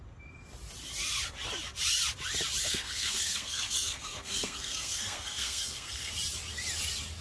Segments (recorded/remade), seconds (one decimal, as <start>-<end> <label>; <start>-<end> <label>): 0.0-2.6 recorded; 2.6-6.1 remade; 6.1-7.2 recorded